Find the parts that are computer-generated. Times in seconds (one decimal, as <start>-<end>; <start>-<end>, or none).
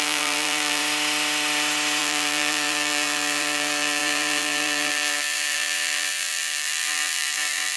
0.0-0.8; 2.0-7.8